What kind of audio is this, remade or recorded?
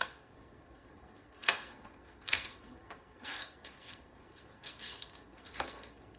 remade